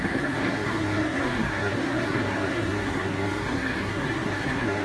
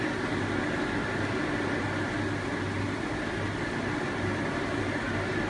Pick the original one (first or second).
second